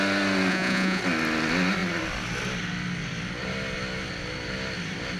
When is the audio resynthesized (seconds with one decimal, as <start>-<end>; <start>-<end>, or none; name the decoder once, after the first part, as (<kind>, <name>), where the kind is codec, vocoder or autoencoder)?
0.5-1.0 (vocoder, Vocos)